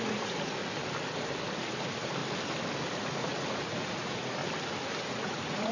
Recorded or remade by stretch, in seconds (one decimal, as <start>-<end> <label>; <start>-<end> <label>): 0.0-0.6 remade; 0.6-1.4 recorded; 1.4-2.2 remade; 2.2-2.9 recorded; 2.9-4.4 remade; 4.4-5.0 recorded; 5.0-5.7 remade